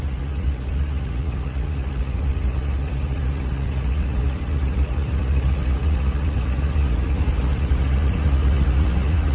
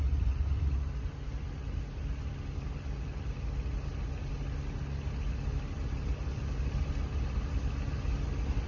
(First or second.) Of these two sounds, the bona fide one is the second